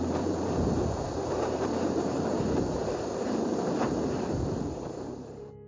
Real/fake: fake